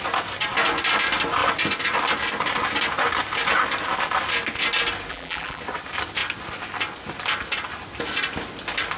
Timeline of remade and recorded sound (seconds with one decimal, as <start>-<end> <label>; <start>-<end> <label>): 0.0-5.1 recorded; 5.1-5.6 remade; 5.6-9.0 recorded